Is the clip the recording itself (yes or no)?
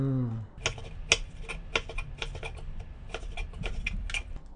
yes